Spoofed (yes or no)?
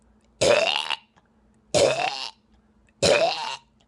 no